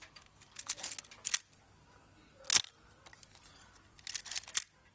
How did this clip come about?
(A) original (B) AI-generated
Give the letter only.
A